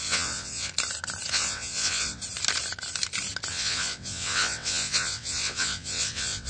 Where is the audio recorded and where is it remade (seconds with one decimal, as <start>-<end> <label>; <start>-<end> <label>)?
0.0-0.7 remade; 0.7-1.3 recorded; 1.3-2.2 remade; 2.2-3.5 recorded; 3.5-6.5 remade